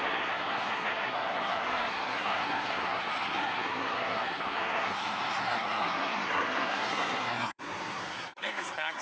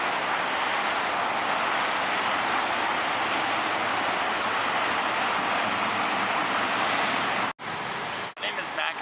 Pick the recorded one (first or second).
second